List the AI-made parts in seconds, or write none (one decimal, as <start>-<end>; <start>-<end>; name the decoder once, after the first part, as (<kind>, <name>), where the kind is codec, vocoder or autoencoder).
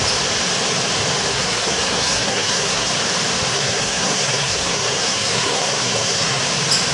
1.3-2.9 (codec, SNAC); 3.5-6.4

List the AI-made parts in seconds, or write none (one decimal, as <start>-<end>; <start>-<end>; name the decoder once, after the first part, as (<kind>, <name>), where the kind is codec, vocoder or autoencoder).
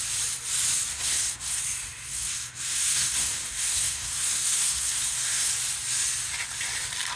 0.9-1.6 (codec, SNAC); 2.1-5.5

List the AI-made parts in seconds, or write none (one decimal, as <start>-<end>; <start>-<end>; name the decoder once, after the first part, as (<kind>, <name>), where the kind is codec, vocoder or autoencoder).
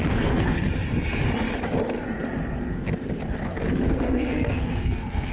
0.0-0.7 (codec, SNAC); 3.9-5.3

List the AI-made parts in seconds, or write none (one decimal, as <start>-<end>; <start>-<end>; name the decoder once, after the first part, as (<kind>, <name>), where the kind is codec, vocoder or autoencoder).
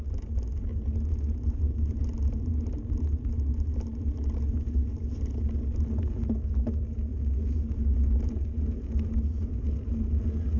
none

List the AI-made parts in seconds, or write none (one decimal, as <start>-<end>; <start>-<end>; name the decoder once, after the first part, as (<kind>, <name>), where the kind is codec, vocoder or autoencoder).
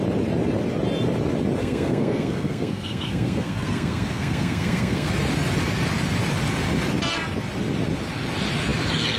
1.6-5.1 (codec, SNAC)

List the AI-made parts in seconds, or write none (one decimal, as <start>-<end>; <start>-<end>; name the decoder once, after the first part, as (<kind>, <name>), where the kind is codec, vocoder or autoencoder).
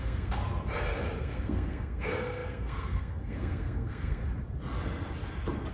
0.0-0.4 (codec, SNAC); 1.2-4.2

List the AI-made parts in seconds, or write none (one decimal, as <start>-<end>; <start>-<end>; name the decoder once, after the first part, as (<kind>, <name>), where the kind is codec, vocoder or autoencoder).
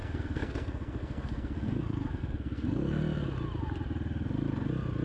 0.0-3.0 (codec, SNAC)